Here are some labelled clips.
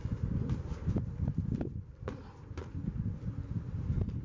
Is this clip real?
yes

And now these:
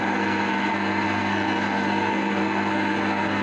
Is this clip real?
no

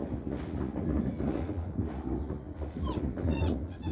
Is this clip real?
no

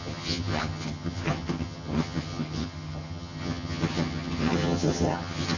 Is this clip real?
no